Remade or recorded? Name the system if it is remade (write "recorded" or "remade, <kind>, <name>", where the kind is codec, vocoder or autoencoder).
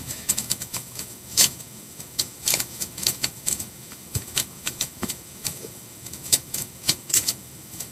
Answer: remade, autoencoder, DAC-VAE